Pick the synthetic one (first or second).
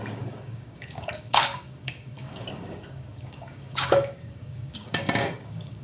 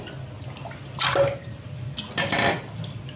first